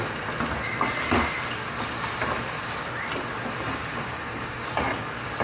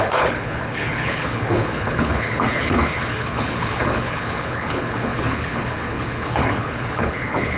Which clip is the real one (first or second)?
first